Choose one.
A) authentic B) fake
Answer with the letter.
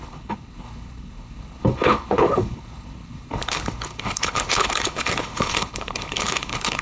B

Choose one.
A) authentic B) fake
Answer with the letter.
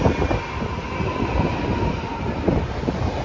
A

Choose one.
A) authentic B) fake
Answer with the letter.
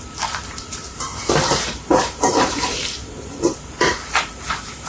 B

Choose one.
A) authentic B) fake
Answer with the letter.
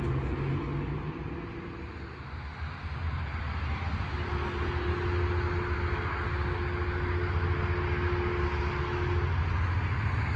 A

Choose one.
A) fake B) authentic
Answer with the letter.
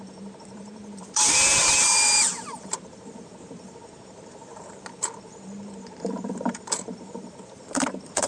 A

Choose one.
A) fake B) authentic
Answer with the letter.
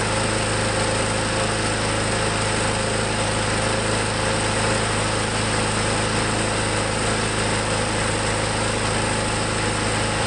B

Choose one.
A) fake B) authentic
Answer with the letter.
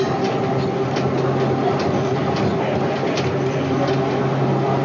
B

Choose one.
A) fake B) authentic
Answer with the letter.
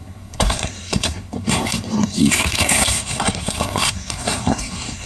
A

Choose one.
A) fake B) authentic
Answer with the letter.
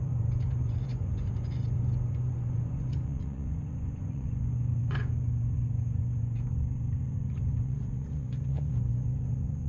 A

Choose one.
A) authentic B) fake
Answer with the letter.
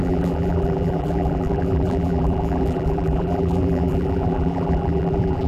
B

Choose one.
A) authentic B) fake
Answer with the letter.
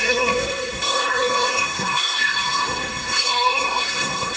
B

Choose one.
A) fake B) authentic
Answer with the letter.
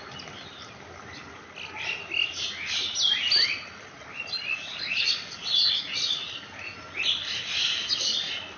B